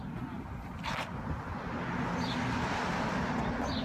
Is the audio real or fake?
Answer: real